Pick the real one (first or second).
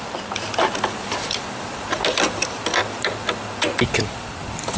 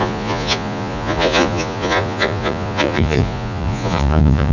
first